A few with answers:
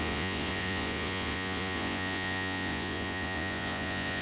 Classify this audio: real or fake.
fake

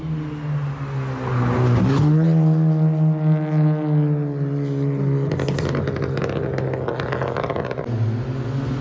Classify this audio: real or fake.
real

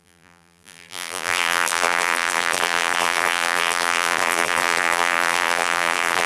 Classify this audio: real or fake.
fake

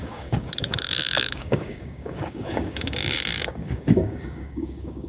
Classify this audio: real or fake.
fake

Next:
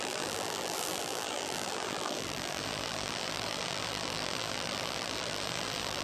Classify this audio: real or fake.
fake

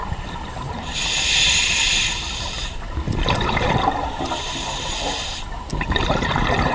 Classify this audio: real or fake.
fake